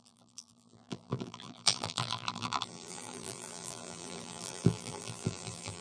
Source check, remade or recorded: remade